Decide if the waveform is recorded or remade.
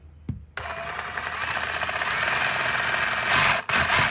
recorded